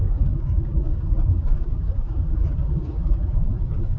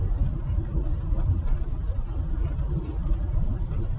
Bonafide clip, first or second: second